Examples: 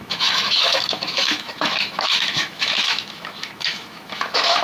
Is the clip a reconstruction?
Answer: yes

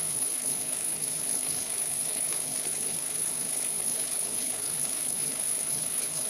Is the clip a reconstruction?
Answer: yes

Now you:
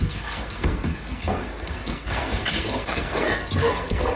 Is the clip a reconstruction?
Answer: yes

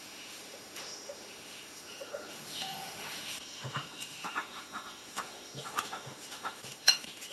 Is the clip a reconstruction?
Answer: yes